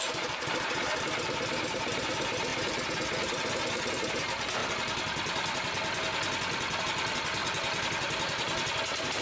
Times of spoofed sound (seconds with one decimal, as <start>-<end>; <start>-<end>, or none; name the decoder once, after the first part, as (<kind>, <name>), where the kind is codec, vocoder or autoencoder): 0.0-2.5 (vocoder, BigVGAN v2); 3.9-4.6; 6.8-7.4